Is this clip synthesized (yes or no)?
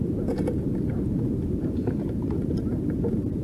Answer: yes